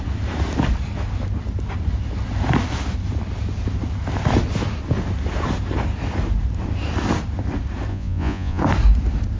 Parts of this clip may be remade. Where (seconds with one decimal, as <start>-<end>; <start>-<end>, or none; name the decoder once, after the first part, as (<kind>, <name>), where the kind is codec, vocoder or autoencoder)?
7.9-8.6 (vocoder, Vocos)

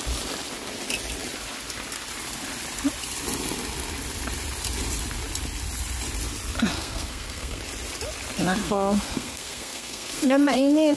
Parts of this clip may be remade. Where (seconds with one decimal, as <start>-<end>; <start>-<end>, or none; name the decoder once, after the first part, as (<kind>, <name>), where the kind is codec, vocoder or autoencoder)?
6.7-7.6 (codec, SNAC); 8.6-11.0

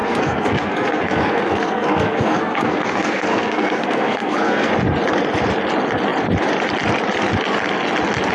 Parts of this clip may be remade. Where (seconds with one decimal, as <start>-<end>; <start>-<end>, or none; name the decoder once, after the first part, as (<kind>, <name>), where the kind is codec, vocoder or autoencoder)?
0.0-4.7 (codec, SNAC)

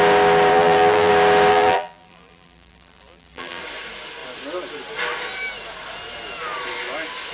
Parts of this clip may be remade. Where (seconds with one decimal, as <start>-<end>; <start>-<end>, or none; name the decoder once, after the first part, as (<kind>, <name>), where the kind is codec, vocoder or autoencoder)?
0.5-1.1 (vocoder, BigVGAN v2); 1.5-3.6

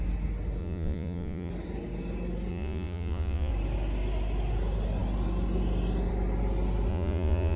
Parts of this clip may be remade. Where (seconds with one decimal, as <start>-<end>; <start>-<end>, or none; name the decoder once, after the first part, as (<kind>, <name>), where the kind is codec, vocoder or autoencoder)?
0.6-1.5 (vocoder, Vocos); 2.5-3.5; 6.9-7.6